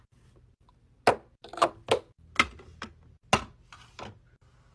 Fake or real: real